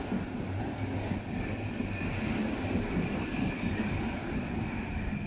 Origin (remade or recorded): recorded